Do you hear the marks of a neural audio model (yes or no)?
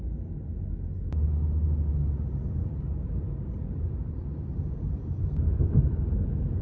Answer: no